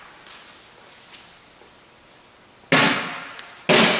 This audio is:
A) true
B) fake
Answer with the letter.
A